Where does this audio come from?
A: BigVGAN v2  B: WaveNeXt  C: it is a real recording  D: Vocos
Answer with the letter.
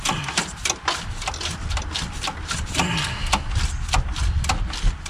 C